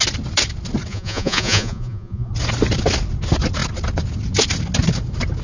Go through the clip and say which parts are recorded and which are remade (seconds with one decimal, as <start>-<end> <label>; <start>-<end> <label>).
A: 0.0-0.9 recorded; 0.9-2.3 remade; 2.3-5.4 recorded

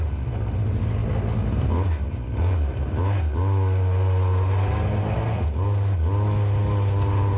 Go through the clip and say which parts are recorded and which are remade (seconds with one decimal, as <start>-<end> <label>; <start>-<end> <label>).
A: 0.0-7.4 recorded

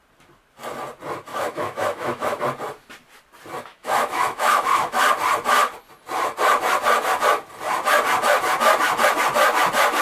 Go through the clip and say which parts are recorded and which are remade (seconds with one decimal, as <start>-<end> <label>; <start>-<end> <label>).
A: 0.0-1.3 recorded; 1.3-2.4 remade; 2.4-3.7 recorded; 3.7-5.0 remade; 5.0-10.0 recorded

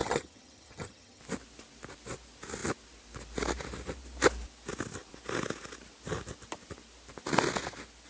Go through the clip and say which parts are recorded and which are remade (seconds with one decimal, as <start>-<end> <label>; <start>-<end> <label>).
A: 0.0-1.2 remade; 1.2-8.1 recorded

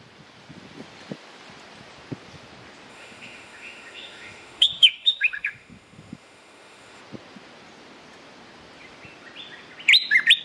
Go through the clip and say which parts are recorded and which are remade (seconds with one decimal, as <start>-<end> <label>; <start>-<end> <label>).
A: 0.0-2.9 recorded; 2.9-7.0 remade; 7.0-10.4 recorded

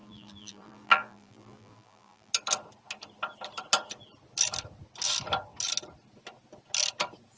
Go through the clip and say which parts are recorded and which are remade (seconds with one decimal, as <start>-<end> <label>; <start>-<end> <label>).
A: 0.0-2.3 remade; 2.3-7.4 recorded